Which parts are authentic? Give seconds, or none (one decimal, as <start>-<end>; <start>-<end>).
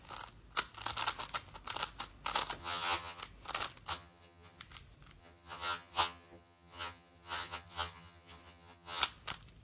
0.0-2.6; 3.2-3.9; 4.6-5.2; 9.0-9.6